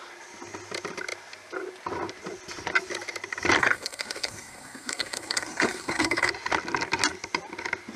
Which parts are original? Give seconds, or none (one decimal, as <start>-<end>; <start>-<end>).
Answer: 0.0-3.6; 6.3-8.0